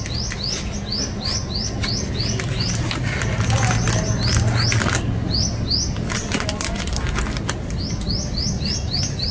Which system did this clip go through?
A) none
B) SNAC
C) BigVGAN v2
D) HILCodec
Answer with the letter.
A